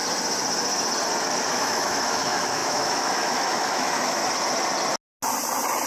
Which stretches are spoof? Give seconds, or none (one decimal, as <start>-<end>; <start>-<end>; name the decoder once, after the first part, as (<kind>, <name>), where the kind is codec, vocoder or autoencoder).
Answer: 1.5-4.2 (autoencoder, DAC-VAE)